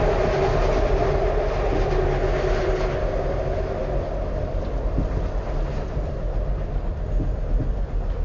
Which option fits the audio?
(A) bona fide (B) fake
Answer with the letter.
A